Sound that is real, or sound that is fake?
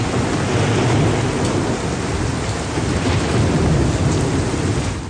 real